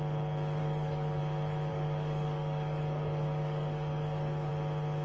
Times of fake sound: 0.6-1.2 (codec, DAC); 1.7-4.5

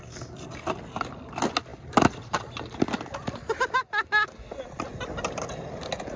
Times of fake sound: none

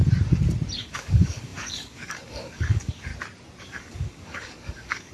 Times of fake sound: 0.8-3.1 (codec, DAC); 3.6-5.1

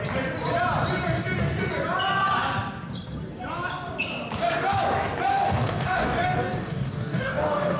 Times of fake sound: 5.3-7.8 (codec, DAC)

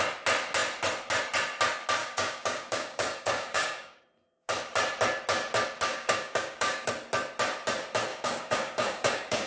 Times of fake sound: 2.0-4.0 (codec, DAC); 5.9-6.9; 8.1-9.5